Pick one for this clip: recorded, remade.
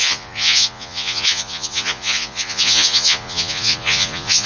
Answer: remade